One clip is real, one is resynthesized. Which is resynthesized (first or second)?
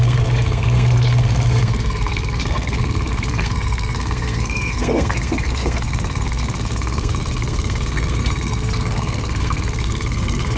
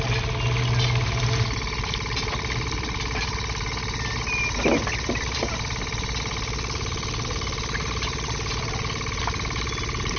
first